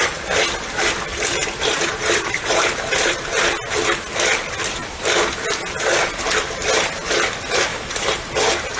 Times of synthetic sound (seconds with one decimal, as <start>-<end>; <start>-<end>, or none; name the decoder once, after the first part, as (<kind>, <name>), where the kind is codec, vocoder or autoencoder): 1.1-3.3 (vocoder, BigVGAN v2); 7.7-8.4